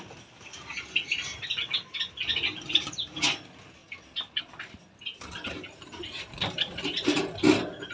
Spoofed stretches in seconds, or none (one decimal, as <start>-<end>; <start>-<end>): none